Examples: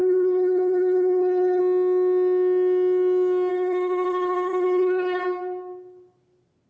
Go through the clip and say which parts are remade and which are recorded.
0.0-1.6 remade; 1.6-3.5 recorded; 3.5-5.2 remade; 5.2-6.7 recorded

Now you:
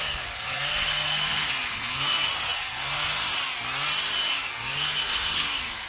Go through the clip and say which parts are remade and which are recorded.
0.0-3.3 remade; 3.3-4.3 recorded; 4.3-5.9 remade

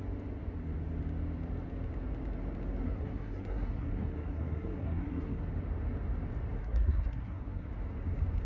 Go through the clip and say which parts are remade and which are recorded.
0.0-2.8 recorded; 2.8-5.4 remade; 5.4-6.6 recorded; 6.6-7.7 remade; 7.7-8.4 recorded

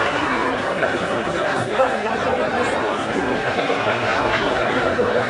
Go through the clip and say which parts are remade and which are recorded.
0.0-2.1 remade; 2.1-2.8 recorded; 2.8-5.3 remade

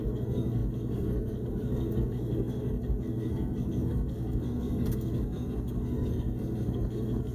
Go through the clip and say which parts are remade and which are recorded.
0.0-7.3 remade

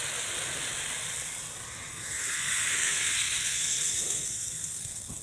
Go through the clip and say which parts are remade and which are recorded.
0.0-1.9 recorded; 1.9-5.2 remade

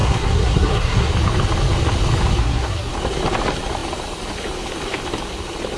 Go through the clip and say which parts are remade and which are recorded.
0.0-1.1 remade; 1.1-2.4 recorded; 2.4-2.9 remade; 2.9-5.8 recorded